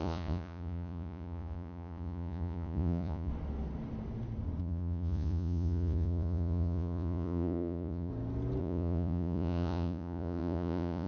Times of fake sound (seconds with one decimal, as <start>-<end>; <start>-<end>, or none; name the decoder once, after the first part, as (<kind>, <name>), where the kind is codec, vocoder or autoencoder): 0.0-3.3 (vocoder, Vocos); 4.6-8.1; 8.6-11.1